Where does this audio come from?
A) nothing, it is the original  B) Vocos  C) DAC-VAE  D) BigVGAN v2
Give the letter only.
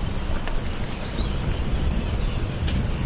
A